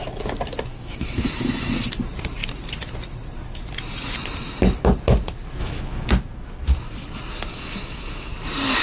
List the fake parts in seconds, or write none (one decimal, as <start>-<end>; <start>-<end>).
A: 0.7-1.7; 5.6-6.1; 7.5-8.3